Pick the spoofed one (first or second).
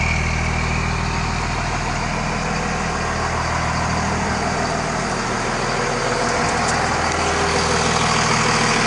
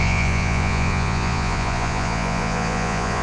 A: second